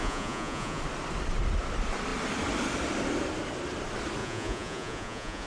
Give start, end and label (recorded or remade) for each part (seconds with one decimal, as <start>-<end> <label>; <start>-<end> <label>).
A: 0.0-0.8 remade; 0.8-4.2 recorded; 4.2-5.5 remade

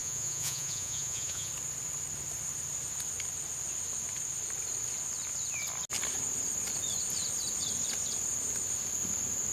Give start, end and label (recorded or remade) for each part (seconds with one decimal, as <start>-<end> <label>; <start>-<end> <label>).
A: 0.0-1.5 remade; 1.5-9.5 recorded

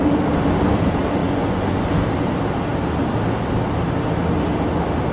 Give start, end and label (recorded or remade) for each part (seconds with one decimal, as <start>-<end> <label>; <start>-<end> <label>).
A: 0.0-1.2 recorded; 1.2-1.8 remade; 1.8-5.1 recorded

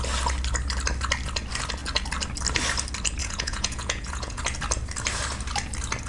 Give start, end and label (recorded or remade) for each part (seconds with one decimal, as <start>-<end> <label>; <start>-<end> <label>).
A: 0.0-3.2 recorded; 3.2-4.4 remade; 4.4-6.1 recorded

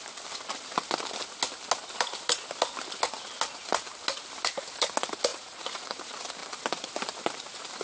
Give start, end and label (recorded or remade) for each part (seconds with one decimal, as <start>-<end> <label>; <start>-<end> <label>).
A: 0.0-5.3 recorded; 5.3-6.0 remade; 6.0-7.8 recorded

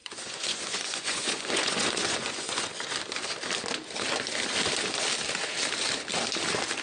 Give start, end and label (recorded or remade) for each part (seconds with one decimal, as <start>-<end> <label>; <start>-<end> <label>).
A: 0.0-2.7 remade; 2.7-6.8 recorded